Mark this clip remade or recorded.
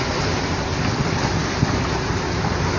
recorded